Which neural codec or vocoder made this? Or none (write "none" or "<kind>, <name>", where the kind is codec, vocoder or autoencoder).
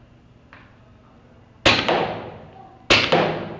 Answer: none